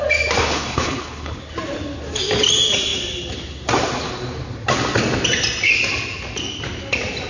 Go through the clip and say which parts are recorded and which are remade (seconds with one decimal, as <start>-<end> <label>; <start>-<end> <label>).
0.0-0.4 recorded; 0.4-1.4 remade; 1.4-7.3 recorded